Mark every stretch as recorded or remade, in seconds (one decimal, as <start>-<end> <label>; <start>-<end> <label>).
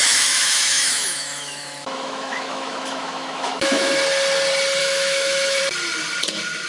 0.0-3.9 remade; 3.9-4.8 recorded; 4.8-5.6 remade; 5.6-6.7 recorded